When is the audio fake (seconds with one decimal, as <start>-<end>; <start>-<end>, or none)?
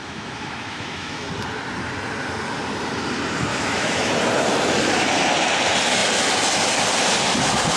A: 0.0-1.3; 3.5-4.1